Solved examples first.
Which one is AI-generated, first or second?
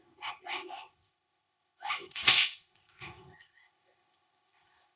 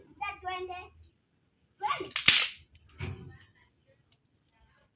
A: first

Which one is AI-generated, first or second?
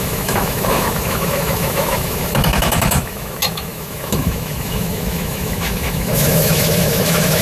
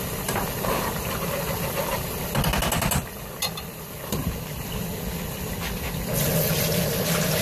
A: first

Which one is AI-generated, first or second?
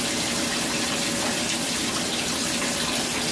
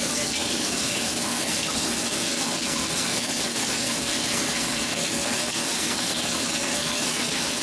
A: second